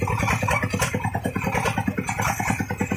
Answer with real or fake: real